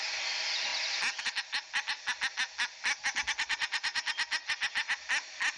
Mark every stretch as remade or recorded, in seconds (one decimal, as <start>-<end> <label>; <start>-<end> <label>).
0.0-5.6 recorded